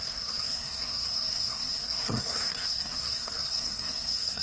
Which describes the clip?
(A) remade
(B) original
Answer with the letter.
A